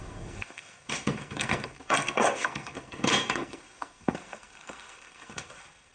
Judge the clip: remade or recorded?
remade